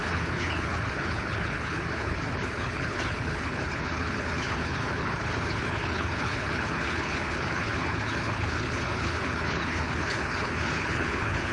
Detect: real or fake fake